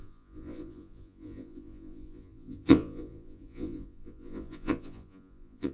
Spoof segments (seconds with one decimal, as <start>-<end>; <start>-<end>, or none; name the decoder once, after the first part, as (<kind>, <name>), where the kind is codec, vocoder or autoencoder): 0.0-5.7 (vocoder, Vocos)